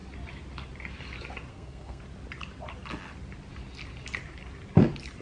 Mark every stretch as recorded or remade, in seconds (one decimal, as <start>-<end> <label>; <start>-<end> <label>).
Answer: 0.0-1.5 recorded; 1.5-2.0 remade; 2.0-5.2 recorded